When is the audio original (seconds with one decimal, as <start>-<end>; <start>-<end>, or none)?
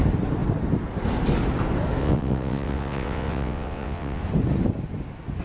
0.0-2.0; 4.2-5.4